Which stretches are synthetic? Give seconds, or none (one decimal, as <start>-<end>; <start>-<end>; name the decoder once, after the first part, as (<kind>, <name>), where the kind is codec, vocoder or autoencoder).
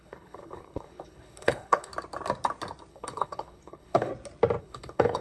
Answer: 0.0-1.9 (codec, HILCodec); 2.9-4.1; 4.6-5.2